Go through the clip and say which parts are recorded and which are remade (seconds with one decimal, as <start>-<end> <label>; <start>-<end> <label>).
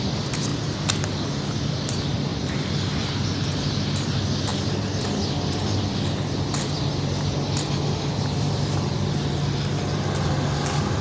0.0-0.5 recorded; 0.5-1.2 remade; 1.2-2.3 recorded; 2.3-3.2 remade; 3.2-4.5 recorded; 4.5-9.1 remade; 9.1-11.0 recorded